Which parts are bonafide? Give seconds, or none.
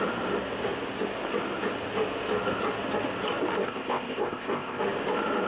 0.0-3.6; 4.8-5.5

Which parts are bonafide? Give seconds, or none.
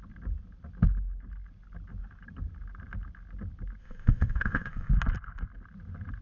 0.0-3.8; 4.9-6.2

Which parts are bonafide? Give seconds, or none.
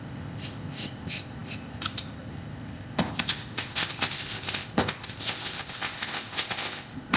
none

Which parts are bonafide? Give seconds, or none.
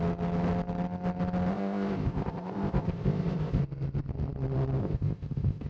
0.0-1.5; 3.6-4.8